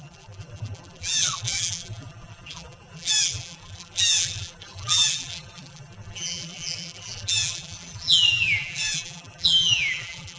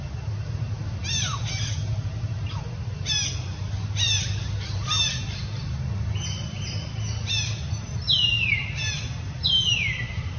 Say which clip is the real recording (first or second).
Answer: second